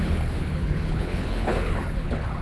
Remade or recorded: remade